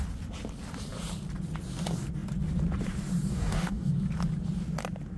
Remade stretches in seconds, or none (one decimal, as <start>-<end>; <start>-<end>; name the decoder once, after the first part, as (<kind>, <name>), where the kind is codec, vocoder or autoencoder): 3.3-3.9 (codec, DAC)